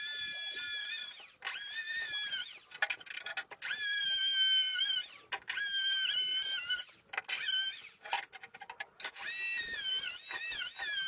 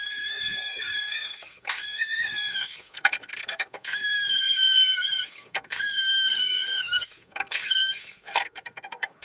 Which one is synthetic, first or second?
second